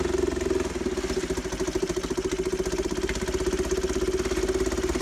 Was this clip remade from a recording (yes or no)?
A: no